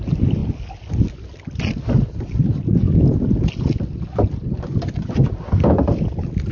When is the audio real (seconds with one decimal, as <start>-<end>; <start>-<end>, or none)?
0.0-6.5